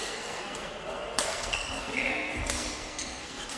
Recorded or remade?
remade